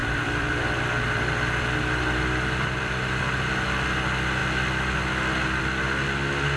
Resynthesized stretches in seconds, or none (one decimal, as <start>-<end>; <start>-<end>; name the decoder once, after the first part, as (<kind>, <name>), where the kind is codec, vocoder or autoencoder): 0.0-3.2 (vocoder, BigVGAN v2)